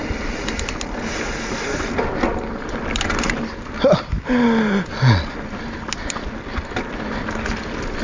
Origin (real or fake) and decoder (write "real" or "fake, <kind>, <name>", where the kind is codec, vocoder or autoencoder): real